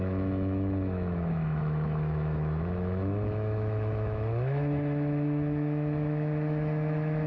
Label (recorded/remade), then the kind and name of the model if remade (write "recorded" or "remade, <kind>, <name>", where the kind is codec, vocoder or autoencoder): remade, autoencoder, DAC-VAE